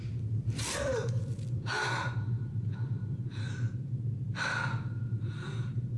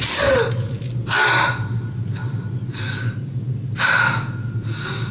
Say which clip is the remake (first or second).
first